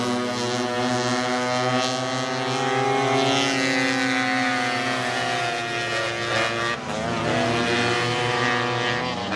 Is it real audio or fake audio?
real